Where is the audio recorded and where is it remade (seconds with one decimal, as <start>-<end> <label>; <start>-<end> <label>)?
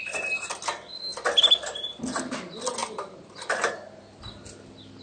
0.0-5.0 recorded